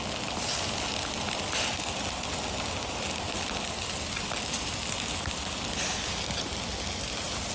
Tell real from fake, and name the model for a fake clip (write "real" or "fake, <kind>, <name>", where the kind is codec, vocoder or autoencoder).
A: real